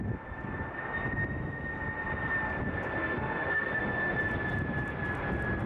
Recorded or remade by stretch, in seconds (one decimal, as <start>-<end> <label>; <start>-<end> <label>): 0.0-3.0 recorded; 3.0-3.8 remade; 3.8-5.7 recorded